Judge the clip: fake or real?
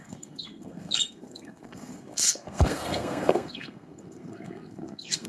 fake